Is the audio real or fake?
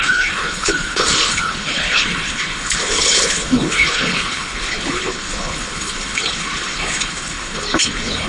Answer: fake